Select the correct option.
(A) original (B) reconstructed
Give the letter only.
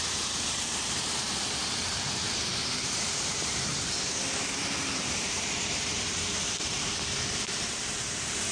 B